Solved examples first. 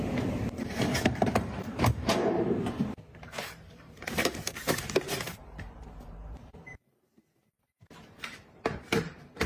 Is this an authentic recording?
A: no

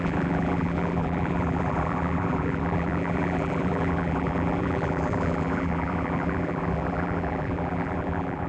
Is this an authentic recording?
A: no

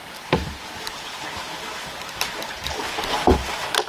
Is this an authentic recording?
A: yes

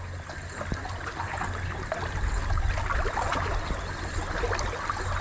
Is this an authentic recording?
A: yes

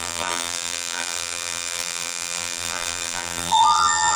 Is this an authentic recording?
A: no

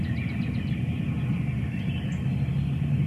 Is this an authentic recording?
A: yes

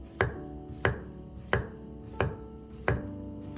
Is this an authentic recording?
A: yes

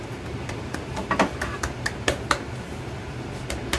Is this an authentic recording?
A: no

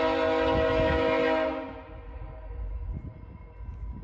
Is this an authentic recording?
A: yes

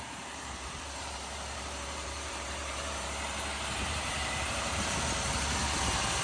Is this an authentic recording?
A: no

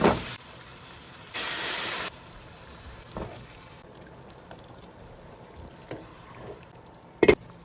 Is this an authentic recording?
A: no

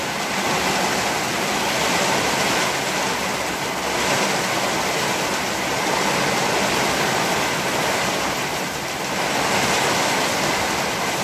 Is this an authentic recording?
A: yes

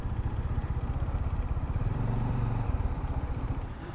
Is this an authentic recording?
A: no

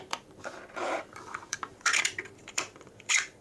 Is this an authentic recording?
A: no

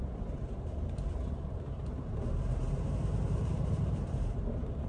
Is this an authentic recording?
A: no